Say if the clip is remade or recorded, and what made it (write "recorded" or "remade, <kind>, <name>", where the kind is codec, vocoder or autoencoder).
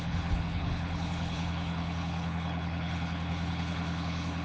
remade, codec, HILCodec